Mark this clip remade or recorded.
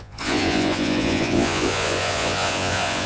remade